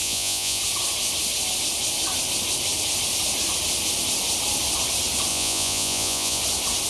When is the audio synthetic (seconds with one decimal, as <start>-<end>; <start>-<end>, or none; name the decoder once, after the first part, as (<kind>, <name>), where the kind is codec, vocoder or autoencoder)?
0.0-0.6 (vocoder, Vocos); 5.3-6.4